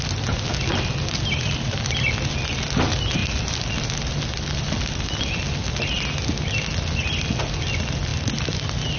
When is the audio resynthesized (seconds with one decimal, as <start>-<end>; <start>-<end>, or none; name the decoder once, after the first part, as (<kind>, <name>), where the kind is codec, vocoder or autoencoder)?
none